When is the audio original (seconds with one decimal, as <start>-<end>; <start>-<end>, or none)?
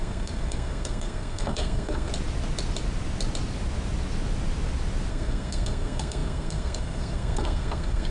2.1-5.1